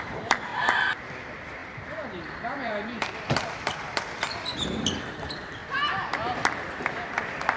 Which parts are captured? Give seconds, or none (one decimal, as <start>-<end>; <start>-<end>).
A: 0.5-1.2; 5.6-6.3